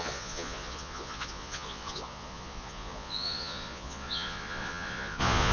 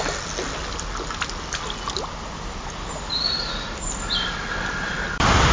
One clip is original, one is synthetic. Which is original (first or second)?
second